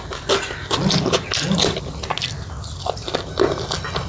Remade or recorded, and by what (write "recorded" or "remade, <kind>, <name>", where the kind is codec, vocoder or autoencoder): recorded